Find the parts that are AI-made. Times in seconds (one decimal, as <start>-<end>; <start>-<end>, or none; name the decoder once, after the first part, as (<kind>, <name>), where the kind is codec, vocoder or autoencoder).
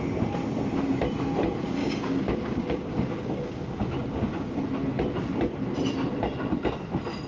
1.8-4.6 (codec, DAC)